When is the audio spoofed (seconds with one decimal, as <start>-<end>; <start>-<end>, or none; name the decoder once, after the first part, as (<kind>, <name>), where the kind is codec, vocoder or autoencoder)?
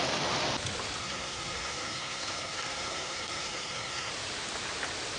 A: 1.0-4.1 (codec, SNAC)